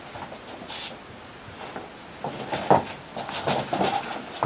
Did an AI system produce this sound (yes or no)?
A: no